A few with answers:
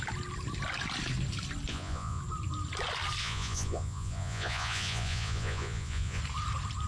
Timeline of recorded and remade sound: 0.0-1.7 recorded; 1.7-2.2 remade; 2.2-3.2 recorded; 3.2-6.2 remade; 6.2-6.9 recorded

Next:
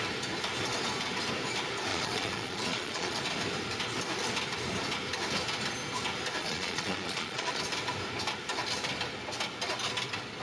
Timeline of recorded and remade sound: 0.0-1.9 recorded; 1.9-3.2 remade; 3.2-6.4 recorded; 6.4-7.6 remade; 7.6-10.4 recorded

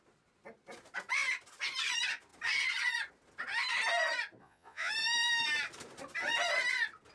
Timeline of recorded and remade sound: 0.0-4.4 recorded; 4.4-4.9 remade; 4.9-7.1 recorded

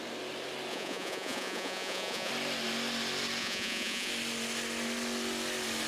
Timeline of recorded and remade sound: 0.0-0.7 recorded; 0.7-2.3 remade; 2.3-3.4 recorded; 3.4-4.1 remade; 4.1-5.9 recorded